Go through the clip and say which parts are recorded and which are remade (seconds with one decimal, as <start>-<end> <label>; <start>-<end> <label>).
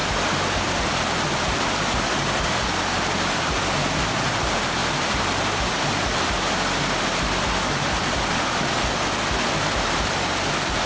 0.0-10.9 recorded